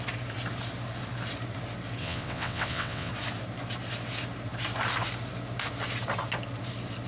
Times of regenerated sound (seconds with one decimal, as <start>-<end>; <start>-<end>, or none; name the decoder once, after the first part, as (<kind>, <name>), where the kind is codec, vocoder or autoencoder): 2.0-3.1 (vocoder, WaveNeXt)